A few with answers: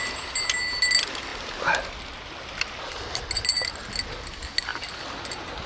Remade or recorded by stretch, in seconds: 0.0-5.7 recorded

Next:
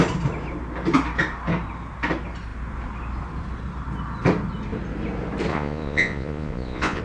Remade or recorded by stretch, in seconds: 0.0-5.5 recorded; 5.5-7.0 remade

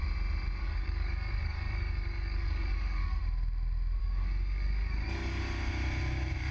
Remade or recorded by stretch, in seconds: 0.0-0.6 recorded; 0.6-3.2 remade; 3.2-4.0 recorded; 4.0-5.4 remade; 5.4-6.5 recorded

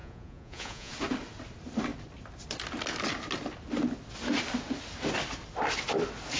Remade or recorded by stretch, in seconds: 0.0-0.9 remade; 0.9-6.4 recorded

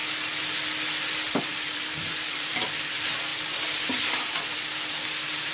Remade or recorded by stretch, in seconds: 0.0-1.4 recorded; 1.4-3.3 remade; 3.3-3.8 recorded; 3.8-5.5 remade